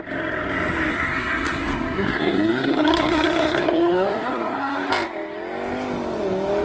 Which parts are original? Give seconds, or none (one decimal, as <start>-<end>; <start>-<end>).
0.0-0.9; 4.9-6.6